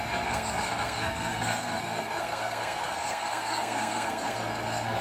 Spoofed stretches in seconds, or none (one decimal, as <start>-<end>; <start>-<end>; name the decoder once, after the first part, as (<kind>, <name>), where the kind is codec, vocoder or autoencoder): 0.0-5.0 (codec, SNAC)